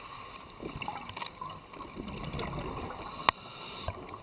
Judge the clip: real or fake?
real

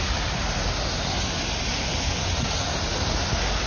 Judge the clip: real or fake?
real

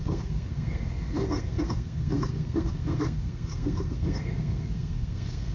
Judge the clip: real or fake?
fake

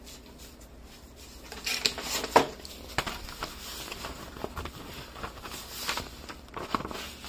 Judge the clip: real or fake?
real